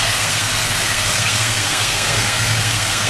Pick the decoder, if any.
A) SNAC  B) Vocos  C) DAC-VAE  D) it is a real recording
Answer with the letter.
A